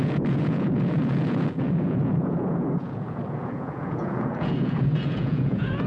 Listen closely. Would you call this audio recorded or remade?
remade